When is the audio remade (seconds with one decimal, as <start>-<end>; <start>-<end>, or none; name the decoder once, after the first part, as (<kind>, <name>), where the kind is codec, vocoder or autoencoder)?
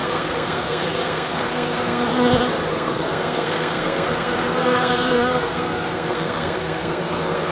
0.0-2.0 (codec, SNAC); 2.7-7.5